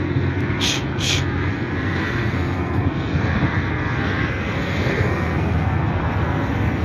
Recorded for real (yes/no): no